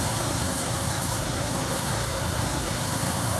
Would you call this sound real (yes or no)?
no